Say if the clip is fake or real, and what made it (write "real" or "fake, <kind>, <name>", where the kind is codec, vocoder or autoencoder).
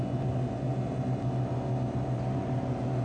real